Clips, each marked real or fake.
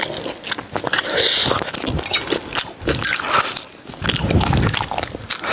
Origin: real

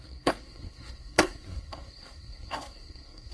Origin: fake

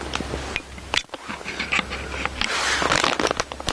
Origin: real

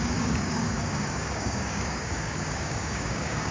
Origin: fake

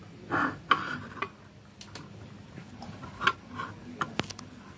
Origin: real